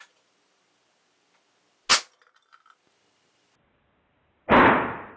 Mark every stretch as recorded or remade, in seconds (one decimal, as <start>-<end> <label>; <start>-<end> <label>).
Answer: 0.0-5.2 recorded